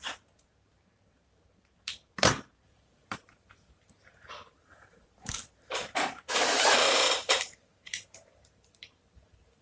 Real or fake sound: fake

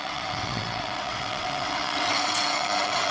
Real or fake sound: fake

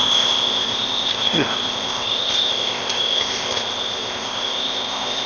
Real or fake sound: fake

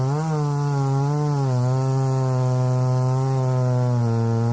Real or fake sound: real